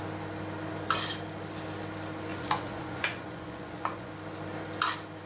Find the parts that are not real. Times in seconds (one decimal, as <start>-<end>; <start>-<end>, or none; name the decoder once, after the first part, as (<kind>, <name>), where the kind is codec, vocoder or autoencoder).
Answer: 2.3-4.1 (vocoder, Vocos)